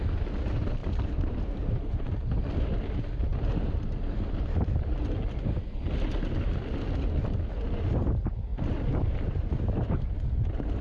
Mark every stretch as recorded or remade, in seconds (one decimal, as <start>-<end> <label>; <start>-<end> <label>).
0.0-0.8 recorded; 0.8-2.4 remade; 2.4-8.5 recorded; 8.5-10.1 remade; 10.1-10.8 recorded